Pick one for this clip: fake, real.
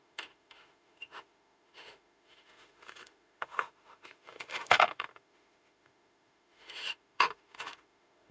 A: fake